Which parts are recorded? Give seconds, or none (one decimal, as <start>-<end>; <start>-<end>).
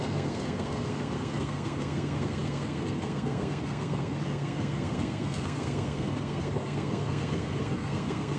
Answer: none